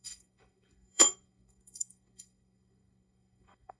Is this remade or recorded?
remade